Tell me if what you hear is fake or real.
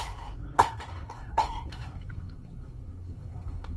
fake